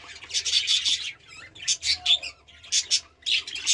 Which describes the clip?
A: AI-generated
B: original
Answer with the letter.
B